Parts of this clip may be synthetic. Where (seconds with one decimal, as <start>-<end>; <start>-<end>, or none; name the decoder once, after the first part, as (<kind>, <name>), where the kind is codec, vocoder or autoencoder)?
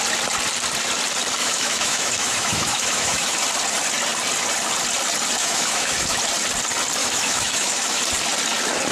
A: 1.4-3.4 (autoencoder, DAC-VAE); 5.4-6.2; 7.0-8.0